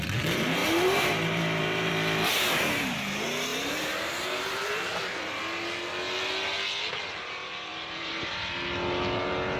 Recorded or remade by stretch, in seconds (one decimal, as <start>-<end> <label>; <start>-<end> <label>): 0.0-0.6 recorded; 0.6-1.9 remade; 1.9-3.5 recorded; 3.5-5.4 remade; 5.4-7.7 recorded; 7.7-8.5 remade; 8.5-9.6 recorded